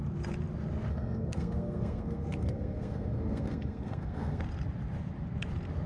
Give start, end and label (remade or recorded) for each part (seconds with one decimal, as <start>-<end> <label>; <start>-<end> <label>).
0.0-0.9 recorded; 0.9-4.4 remade; 4.4-5.9 recorded